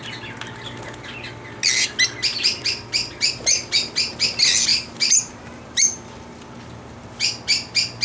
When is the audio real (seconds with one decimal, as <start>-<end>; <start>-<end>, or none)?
0.0-4.7; 6.3-8.0

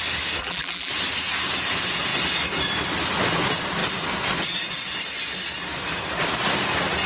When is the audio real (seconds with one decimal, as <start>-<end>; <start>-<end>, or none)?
0.0-0.4; 0.9-7.1

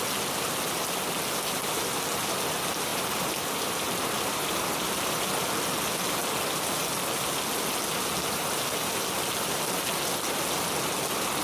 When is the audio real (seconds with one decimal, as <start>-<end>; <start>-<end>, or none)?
0.0-2.9; 4.5-11.4